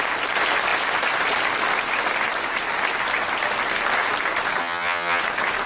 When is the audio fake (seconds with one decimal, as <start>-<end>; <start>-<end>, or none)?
4.6-5.2